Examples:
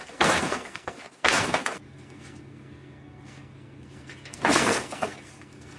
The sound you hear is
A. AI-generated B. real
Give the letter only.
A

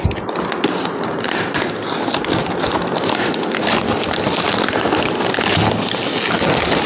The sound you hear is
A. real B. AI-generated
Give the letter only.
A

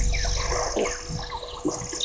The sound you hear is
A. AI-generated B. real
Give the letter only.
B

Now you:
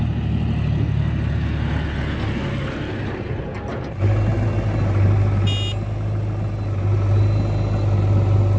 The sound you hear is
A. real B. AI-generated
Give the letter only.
A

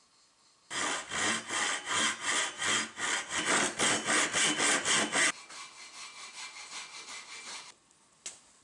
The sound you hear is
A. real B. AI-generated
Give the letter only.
A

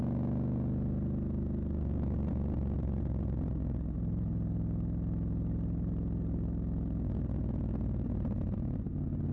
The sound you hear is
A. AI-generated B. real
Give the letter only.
B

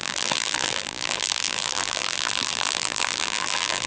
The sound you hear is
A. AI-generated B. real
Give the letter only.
A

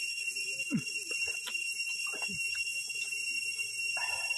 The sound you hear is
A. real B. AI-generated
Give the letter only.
A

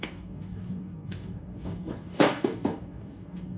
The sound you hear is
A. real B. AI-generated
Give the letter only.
B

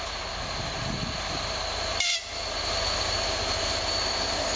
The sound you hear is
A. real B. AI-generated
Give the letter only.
A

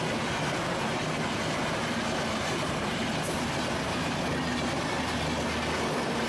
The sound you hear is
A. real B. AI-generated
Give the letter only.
A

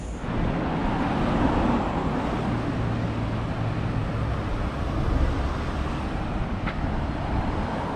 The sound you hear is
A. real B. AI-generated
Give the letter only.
A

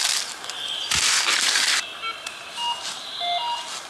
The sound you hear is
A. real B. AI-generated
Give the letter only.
A